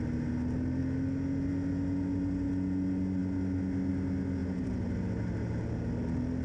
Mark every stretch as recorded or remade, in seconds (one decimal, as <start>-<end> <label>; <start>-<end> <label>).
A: 0.0-4.4 recorded; 4.4-5.0 remade; 5.0-6.4 recorded